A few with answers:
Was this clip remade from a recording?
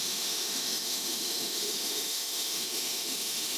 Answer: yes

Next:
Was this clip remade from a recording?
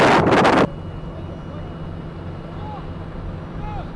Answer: no